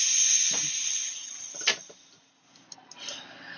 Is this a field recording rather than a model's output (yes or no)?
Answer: yes